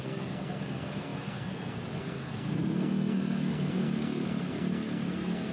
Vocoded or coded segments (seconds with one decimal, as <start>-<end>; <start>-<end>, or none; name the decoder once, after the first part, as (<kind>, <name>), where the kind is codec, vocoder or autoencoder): 0.0-5.5 (codec, SNAC)